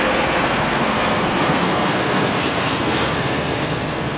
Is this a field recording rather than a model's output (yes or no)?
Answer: no